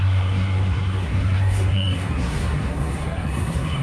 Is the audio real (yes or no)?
no